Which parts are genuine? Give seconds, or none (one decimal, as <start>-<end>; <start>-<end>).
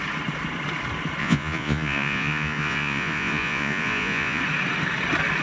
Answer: 0.0-1.2; 4.4-5.4